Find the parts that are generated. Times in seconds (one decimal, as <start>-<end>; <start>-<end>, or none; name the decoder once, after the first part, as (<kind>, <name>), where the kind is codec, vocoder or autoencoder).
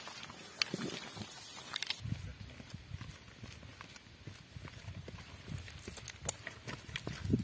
none